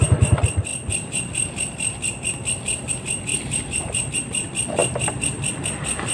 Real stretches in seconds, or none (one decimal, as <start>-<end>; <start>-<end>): 0.0-3.3; 4.1-6.1